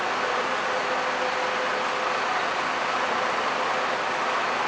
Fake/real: real